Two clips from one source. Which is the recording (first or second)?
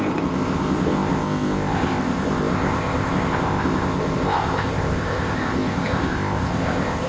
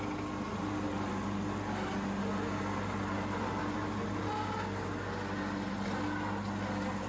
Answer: second